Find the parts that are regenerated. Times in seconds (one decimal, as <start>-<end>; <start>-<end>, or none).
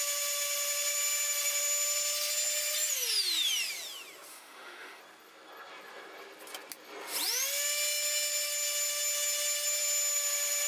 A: 4.3-5.0